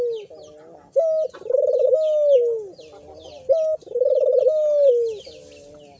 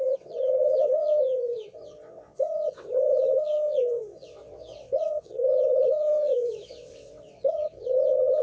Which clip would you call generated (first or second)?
second